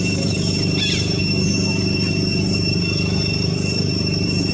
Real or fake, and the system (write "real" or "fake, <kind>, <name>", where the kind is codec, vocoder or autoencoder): real